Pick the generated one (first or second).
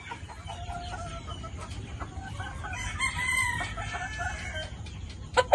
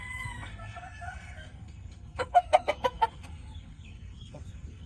second